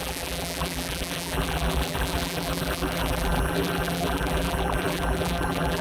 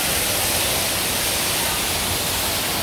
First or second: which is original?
second